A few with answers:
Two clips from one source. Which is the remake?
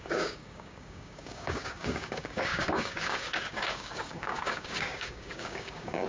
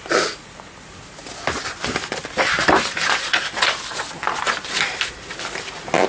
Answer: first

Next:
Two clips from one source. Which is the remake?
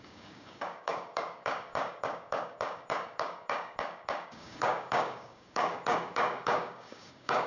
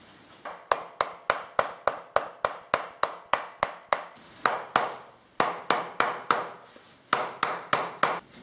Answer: first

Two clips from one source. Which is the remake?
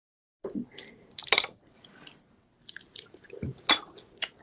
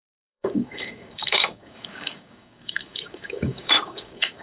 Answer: second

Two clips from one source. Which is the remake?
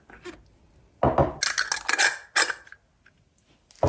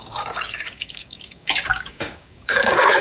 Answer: second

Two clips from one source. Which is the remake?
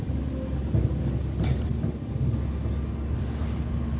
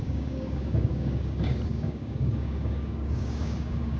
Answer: second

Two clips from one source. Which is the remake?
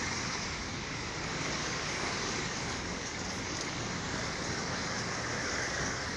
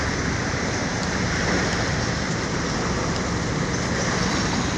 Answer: first